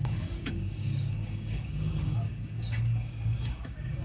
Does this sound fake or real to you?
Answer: fake